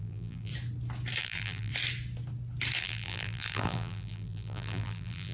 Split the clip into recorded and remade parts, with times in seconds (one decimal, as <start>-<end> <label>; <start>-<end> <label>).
0.0-0.5 remade; 0.5-1.2 recorded; 1.2-1.7 remade; 1.7-2.8 recorded; 2.8-5.3 remade